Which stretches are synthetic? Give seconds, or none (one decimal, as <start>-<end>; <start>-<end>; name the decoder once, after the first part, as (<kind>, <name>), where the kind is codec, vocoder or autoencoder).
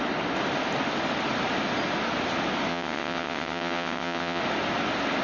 2.7-4.4 (vocoder, WaveNeXt)